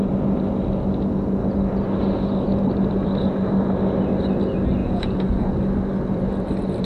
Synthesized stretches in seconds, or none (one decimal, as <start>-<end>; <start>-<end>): 4.8-5.5